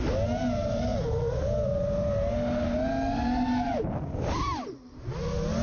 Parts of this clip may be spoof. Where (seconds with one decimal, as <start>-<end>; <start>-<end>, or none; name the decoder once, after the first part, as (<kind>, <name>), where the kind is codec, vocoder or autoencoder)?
none